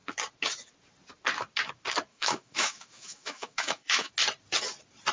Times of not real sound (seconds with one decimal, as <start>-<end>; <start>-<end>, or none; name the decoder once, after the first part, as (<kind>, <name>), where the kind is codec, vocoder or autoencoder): 2.1-4.1 (autoencoder, DAC-VAE)